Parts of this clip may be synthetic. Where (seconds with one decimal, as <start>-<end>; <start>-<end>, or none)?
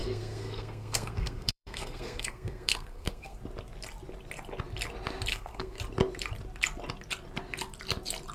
0.0-3.4; 5.3-5.8